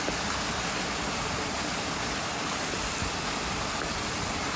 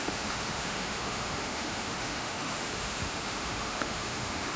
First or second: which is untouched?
first